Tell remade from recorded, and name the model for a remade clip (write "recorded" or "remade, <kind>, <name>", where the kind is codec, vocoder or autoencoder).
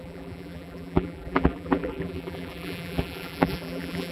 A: remade, vocoder, BigVGAN v2